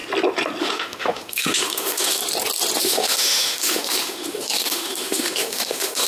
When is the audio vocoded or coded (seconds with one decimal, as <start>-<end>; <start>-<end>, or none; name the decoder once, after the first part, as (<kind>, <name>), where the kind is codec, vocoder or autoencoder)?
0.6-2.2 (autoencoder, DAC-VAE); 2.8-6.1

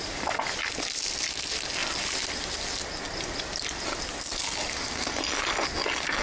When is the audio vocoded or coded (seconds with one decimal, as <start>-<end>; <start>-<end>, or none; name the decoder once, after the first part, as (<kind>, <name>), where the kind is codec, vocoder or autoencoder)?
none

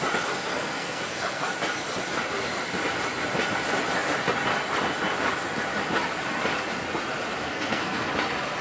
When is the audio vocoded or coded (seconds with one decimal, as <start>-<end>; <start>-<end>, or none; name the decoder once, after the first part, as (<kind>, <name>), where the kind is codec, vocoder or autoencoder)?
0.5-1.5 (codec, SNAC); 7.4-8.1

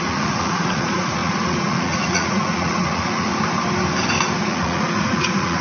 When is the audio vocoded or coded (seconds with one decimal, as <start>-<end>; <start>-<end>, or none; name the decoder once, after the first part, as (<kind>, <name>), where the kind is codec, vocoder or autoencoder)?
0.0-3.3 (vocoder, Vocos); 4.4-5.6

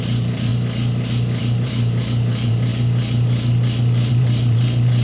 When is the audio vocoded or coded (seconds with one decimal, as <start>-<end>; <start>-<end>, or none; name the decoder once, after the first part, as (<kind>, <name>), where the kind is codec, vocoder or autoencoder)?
0.0-0.5 (vocoder, BigVGAN v2); 1.4-2.7; 4.1-5.0